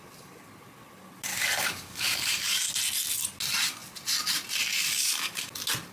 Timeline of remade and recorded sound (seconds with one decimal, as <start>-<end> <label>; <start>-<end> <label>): 0.0-1.3 recorded; 1.3-2.6 remade; 2.6-4.7 recorded; 4.7-5.5 remade; 5.5-5.9 recorded